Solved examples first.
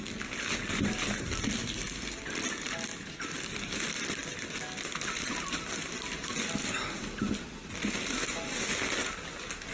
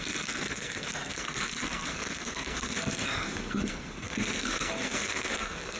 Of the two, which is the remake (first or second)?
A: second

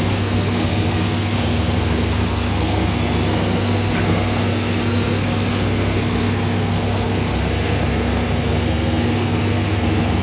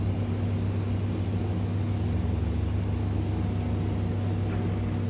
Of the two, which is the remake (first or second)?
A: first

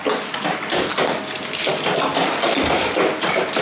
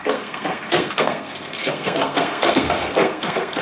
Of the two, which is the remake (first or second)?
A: second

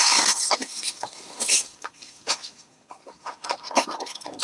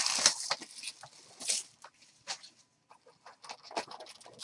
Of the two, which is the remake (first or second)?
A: first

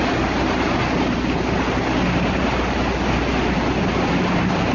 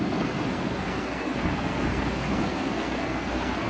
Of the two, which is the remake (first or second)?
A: second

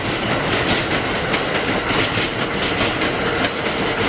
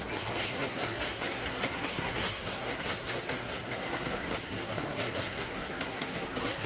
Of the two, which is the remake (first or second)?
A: second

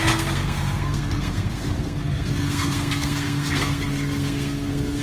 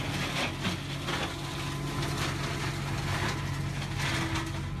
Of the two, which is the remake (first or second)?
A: first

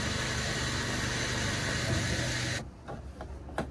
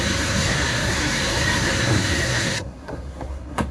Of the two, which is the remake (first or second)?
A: second